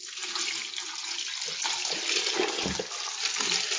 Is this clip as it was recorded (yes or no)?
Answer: yes